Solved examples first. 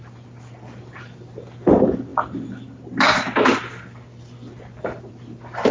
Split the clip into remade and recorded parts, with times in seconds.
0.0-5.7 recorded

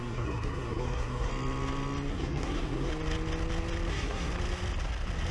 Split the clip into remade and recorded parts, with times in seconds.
0.0-1.3 remade; 1.3-2.1 recorded; 2.1-2.9 remade; 2.9-3.9 recorded; 3.9-4.3 remade; 4.3-5.3 recorded

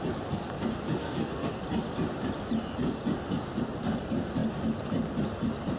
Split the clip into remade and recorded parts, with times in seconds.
0.0-1.0 recorded; 1.0-1.5 remade; 1.5-5.8 recorded

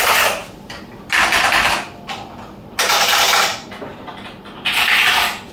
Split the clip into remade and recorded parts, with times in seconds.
0.0-5.5 recorded

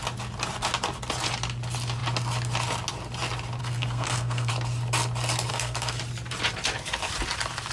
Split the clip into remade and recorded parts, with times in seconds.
0.0-3.6 recorded; 3.6-4.5 remade; 4.5-5.5 recorded; 5.5-6.0 remade; 6.0-7.7 recorded

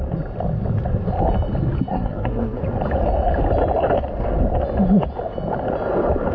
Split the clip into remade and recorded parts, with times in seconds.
0.0-1.9 recorded; 1.9-2.6 remade; 2.6-6.3 recorded